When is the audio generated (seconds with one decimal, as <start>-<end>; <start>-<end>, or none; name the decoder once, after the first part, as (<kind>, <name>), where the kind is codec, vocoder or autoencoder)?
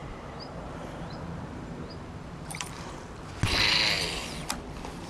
0.0-3.1 (vocoder, BigVGAN v2)